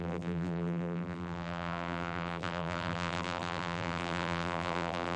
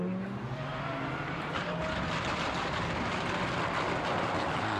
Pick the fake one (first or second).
first